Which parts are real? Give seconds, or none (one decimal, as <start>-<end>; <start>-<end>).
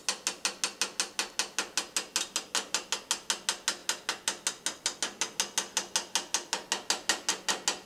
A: 0.0-7.9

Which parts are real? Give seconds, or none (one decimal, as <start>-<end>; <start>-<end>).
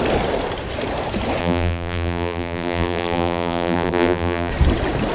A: 0.0-1.4; 4.5-5.1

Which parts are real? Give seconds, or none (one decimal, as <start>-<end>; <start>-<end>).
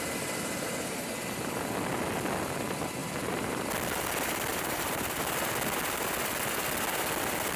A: 0.0-3.0; 3.7-4.5; 5.2-7.6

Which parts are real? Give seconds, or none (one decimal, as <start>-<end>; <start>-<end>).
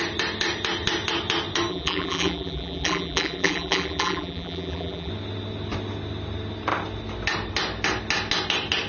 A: 0.0-1.7; 5.1-8.9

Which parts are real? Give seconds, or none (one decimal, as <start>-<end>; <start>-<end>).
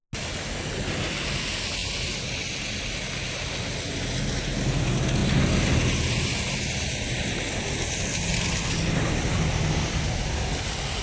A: 0.0-11.0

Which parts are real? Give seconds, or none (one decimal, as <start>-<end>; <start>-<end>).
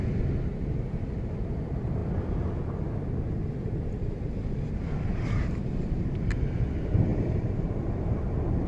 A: 0.0-5.1; 6.2-7.1; 8.2-8.7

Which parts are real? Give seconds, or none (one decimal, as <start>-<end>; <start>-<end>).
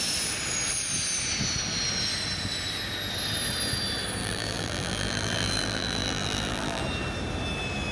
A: 0.0-4.2; 6.8-7.9